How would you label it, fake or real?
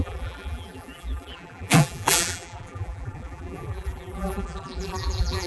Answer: fake